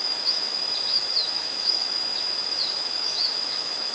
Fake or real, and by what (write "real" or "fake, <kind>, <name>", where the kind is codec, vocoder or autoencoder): fake, autoencoder, DAC-VAE